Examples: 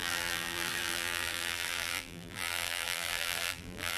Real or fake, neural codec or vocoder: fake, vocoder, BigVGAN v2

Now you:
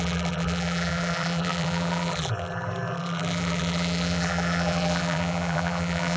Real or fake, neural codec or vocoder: fake, vocoder, BigVGAN v2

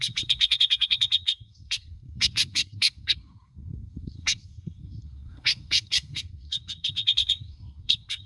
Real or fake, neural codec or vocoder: fake, codec, SNAC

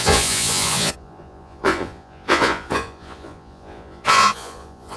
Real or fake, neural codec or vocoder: fake, vocoder, Vocos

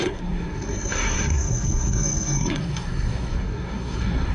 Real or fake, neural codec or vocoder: fake, codec, SNAC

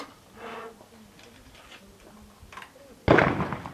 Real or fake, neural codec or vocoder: real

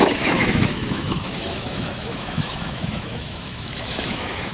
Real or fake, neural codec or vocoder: fake, autoencoder, DAC-VAE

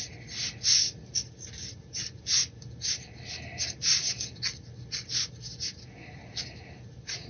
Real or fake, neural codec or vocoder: real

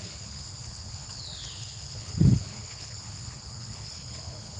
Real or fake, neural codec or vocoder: fake, codec, HILCodec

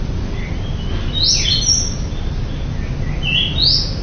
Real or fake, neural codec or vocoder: real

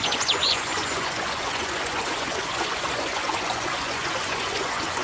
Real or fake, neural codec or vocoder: fake, vocoder, Vocos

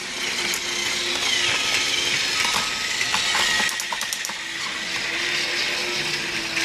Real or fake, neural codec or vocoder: real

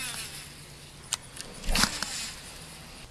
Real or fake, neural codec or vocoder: real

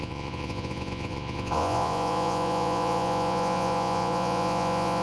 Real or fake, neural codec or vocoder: fake, vocoder, Vocos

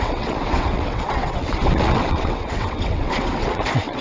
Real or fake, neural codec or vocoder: fake, vocoder, WaveNeXt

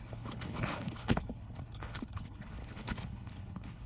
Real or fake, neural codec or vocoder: fake, codec, HILCodec